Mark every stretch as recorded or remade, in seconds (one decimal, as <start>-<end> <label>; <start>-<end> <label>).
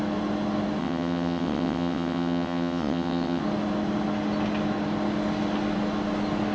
0.0-0.8 recorded; 0.8-3.4 remade; 3.4-6.5 recorded